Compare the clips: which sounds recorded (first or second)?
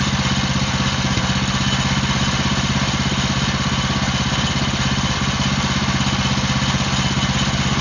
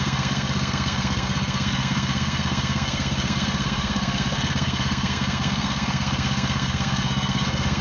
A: first